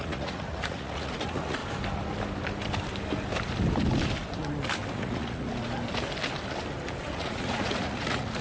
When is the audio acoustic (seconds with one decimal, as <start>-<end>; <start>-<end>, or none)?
1.6-4.9; 5.5-7.1